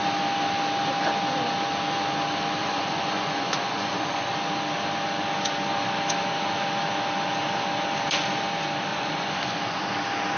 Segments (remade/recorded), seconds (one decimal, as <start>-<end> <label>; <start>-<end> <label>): 0.0-2.6 recorded; 2.6-4.3 remade; 4.3-8.9 recorded; 8.9-9.8 remade; 9.8-10.4 recorded